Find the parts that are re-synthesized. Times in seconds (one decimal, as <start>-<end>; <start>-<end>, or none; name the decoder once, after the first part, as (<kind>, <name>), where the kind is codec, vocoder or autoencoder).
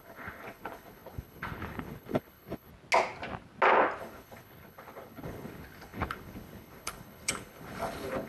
0.0-2.7 (codec, HILCodec); 4.0-8.3